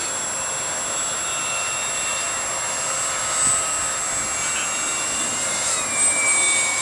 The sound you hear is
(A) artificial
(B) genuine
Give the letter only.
B